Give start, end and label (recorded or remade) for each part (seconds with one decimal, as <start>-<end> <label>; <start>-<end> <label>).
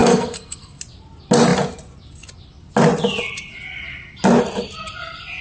0.0-0.8 remade; 0.8-5.4 recorded